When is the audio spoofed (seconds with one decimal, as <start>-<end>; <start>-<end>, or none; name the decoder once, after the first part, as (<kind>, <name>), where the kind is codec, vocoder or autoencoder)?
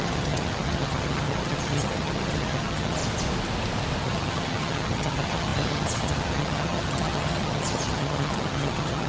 0.0-3.0 (vocoder, HiFi-GAN); 4.0-9.1